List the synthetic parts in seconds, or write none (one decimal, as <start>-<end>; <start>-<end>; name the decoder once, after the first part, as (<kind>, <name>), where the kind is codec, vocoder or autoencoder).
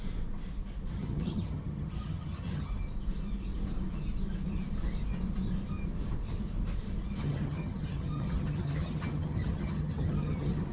0.9-2.7 (vocoder, HiFi-GAN); 7.2-10.7